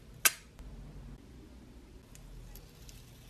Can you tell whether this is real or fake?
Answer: real